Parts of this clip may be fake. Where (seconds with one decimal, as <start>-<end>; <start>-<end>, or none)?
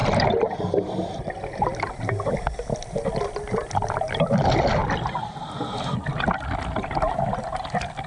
none